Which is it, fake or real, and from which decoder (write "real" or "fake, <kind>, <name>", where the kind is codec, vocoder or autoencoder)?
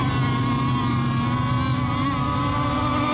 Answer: real